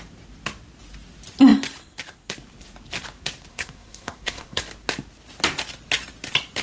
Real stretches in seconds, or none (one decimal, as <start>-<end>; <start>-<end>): 0.0-3.5; 4.6-6.6